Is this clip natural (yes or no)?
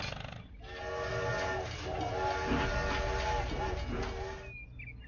yes